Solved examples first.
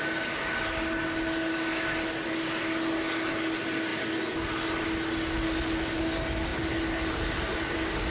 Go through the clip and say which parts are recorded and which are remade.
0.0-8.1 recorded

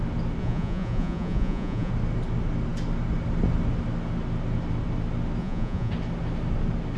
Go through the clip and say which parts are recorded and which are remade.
0.0-0.4 recorded; 0.4-1.9 remade; 1.9-5.4 recorded; 5.4-5.9 remade; 5.9-7.0 recorded